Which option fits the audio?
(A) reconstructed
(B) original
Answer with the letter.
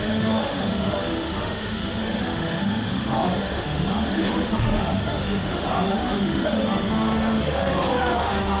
A